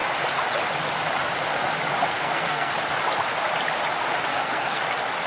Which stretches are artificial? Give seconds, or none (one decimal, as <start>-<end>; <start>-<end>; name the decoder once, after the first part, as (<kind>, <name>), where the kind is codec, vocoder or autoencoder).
2.1-2.7 (codec, SNAC); 4.3-4.8

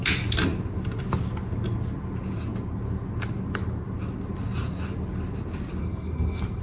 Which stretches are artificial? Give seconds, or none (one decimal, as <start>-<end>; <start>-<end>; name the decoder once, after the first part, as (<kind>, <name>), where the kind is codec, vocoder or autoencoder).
5.8-6.6 (codec, SNAC)

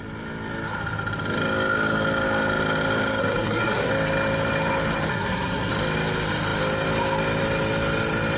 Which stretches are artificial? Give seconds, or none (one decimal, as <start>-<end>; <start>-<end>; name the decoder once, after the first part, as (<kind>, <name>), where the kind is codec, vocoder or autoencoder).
3.2-3.9 (codec, SNAC); 5.1-5.7

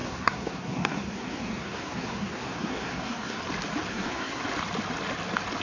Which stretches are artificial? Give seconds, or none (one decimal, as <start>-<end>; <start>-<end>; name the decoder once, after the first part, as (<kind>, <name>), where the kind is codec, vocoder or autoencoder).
0.0-3.4 (codec, SNAC); 3.9-4.4

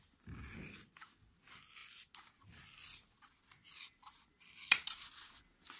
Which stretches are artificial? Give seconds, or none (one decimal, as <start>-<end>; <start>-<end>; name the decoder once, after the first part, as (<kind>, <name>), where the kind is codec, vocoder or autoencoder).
none

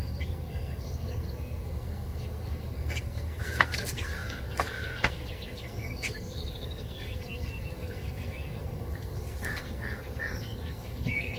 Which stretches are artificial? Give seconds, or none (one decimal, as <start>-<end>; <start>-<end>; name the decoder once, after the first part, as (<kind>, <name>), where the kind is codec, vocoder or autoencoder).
0.0-11.4 (codec, SNAC)